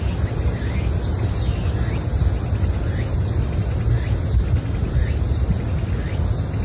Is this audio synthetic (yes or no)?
no